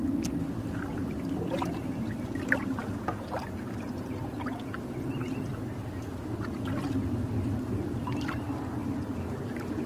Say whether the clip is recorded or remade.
recorded